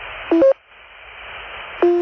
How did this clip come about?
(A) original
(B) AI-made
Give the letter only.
A